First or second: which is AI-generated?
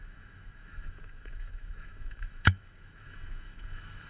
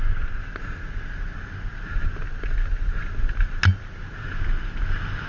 first